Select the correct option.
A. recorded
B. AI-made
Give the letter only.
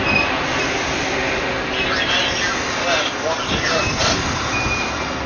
A